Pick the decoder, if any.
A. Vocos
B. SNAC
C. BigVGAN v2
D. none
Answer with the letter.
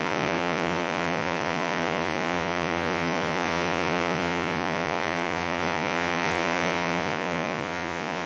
A